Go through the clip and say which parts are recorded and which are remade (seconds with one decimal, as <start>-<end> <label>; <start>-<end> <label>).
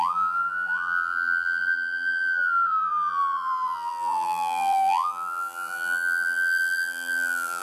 0.0-7.6 remade